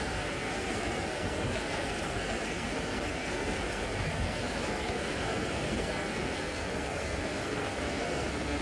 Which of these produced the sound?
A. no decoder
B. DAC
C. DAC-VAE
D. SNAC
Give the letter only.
D